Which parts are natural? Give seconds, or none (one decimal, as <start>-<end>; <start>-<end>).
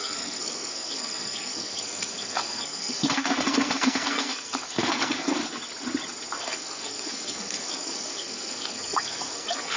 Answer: 5.4-6.4